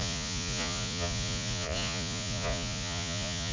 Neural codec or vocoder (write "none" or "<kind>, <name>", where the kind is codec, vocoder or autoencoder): vocoder, Vocos